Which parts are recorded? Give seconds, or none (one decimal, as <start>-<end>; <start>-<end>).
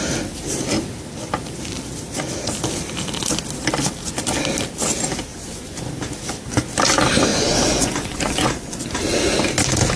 0.0-5.3; 5.9-7.3; 8.8-10.0